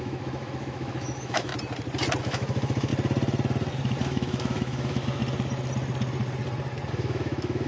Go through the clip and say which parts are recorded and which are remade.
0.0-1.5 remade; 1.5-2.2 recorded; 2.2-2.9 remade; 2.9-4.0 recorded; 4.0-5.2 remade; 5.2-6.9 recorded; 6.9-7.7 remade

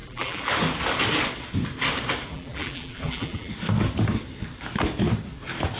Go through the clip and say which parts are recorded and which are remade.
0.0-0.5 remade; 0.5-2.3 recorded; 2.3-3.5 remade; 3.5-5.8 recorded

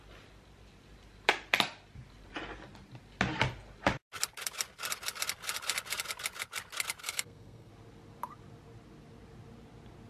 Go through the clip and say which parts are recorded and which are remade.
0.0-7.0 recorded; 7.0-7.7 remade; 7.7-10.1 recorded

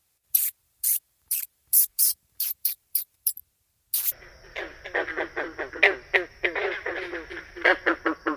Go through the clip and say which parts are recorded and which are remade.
0.0-3.4 remade; 3.4-6.3 recorded; 6.3-6.9 remade; 6.9-7.5 recorded; 7.5-8.4 remade

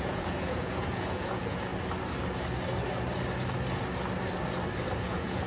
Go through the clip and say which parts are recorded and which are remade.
0.0-1.7 remade; 1.7-5.0 recorded; 5.0-5.5 remade